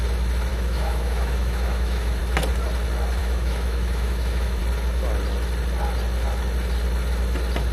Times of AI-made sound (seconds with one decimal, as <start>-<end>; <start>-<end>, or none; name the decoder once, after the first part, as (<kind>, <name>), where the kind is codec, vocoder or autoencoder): 0.5-2.2 (autoencoder, DAC-VAE); 3.2-4.6